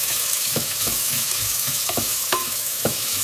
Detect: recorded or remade remade